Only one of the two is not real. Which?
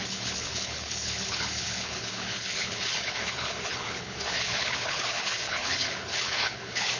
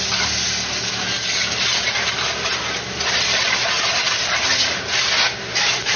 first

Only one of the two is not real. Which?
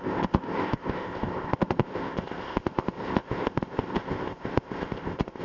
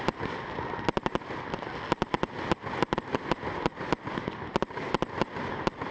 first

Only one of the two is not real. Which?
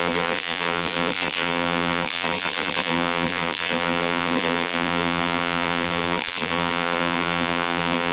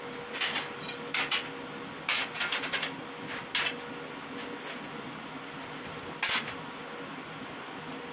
first